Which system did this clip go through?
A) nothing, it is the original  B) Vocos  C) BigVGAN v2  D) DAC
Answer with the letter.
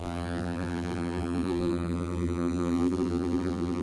C